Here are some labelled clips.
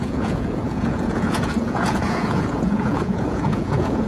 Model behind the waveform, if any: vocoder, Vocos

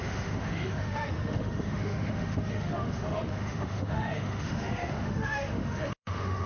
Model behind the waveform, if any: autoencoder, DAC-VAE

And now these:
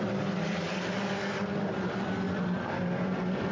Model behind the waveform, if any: vocoder, BigVGAN v2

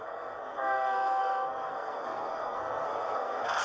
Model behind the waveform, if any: codec, SNAC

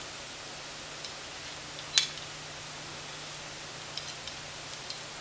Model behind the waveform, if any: none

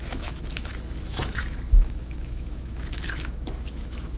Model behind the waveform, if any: autoencoder, DAC-VAE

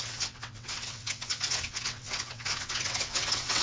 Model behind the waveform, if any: vocoder, WaveNeXt